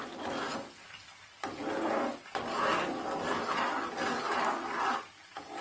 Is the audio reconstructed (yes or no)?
no